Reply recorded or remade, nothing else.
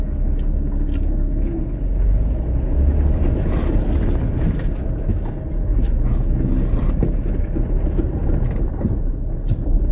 recorded